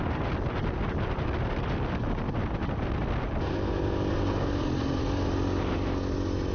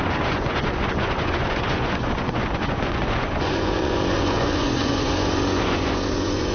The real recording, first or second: first